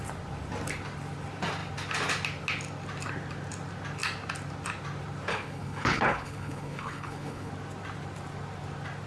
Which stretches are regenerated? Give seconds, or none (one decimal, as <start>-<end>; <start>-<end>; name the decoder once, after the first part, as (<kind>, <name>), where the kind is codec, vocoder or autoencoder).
5.3-7.5 (codec, HILCodec)